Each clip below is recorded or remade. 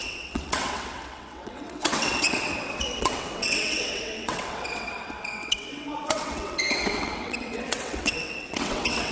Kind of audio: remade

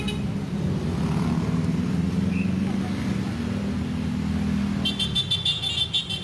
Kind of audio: recorded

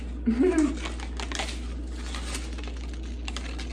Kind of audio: recorded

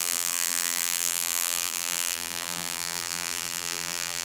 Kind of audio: remade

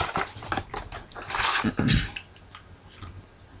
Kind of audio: recorded